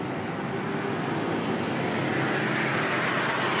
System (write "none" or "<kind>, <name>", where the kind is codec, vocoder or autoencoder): none